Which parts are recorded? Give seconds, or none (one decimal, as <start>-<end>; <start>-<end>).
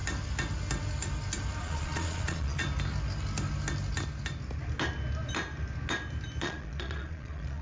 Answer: 0.0-1.6; 2.6-6.4